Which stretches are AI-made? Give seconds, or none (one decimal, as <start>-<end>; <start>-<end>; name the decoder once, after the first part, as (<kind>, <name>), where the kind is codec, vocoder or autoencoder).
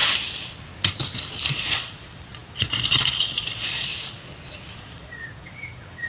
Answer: 1.5-3.9 (vocoder, Vocos); 4.8-6.1